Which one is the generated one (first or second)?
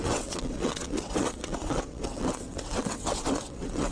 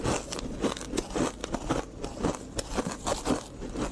first